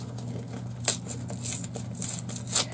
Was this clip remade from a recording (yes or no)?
no